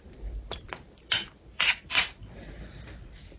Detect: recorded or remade remade